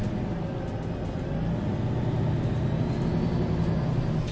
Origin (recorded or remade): recorded